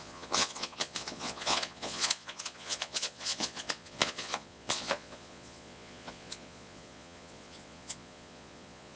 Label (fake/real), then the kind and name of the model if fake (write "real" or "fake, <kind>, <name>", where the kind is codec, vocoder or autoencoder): fake, vocoder, Vocos